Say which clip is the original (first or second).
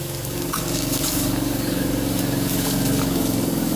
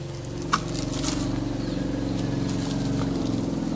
second